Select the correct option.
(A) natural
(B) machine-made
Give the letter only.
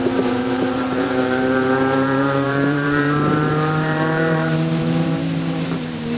B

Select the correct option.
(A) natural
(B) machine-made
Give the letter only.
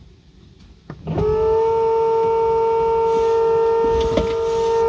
A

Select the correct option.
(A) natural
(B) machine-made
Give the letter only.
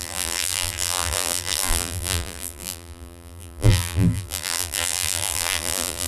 B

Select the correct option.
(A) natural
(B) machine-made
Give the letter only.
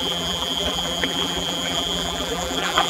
B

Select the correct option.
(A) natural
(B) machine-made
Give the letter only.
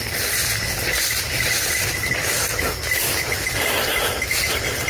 A